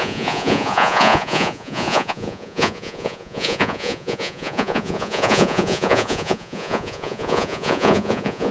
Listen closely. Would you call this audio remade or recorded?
remade